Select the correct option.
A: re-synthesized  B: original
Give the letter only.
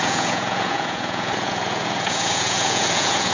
A